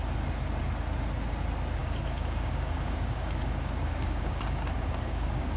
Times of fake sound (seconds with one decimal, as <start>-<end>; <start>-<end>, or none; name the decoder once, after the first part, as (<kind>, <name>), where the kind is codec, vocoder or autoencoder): 1.8-5.6 (codec, DAC)